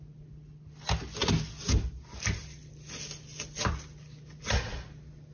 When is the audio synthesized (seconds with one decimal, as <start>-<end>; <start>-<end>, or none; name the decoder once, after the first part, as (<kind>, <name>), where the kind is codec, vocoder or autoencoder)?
none